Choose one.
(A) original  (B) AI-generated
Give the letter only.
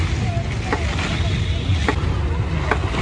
A